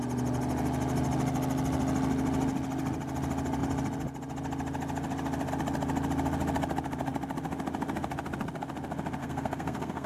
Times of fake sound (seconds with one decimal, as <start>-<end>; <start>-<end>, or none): 9.2-10.1